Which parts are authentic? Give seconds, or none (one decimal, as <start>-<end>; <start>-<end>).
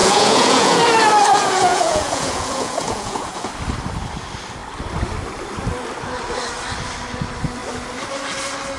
0.8-1.4; 3.5-8.8